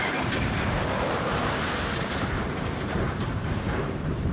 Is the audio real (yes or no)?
no